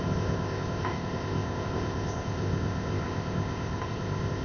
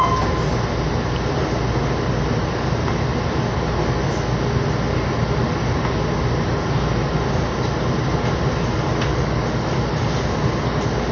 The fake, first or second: first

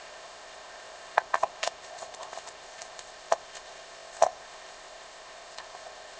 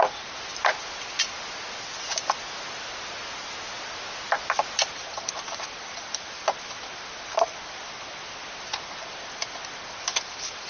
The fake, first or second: first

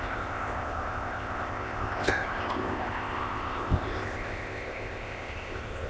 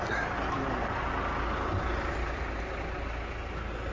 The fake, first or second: first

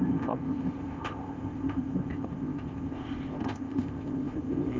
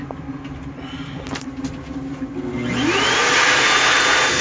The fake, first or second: first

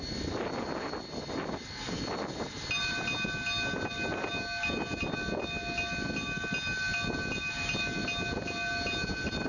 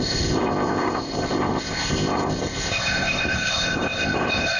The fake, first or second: second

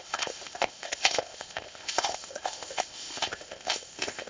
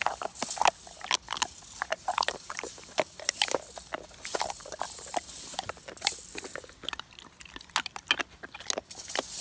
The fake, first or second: first